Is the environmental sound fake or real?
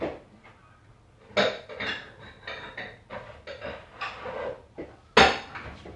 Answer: real